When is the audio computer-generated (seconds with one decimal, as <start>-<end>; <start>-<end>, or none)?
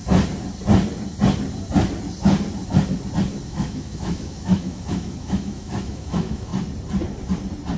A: 3.5-6.5